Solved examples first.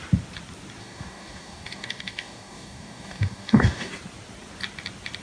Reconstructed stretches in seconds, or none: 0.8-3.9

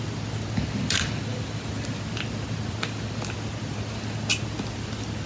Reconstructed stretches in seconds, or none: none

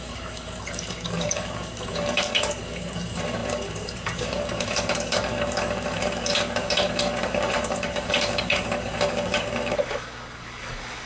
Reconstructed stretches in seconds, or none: 0.0-11.1

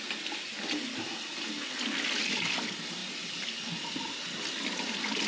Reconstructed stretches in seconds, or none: none

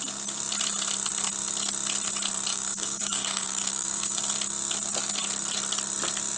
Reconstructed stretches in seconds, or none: 2.5-4.2

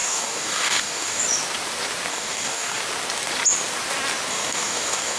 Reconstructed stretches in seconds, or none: 0.0-1.2; 2.1-2.8; 4.3-5.2

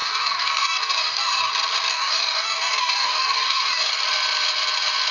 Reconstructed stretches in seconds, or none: 0.0-1.5; 1.9-3.9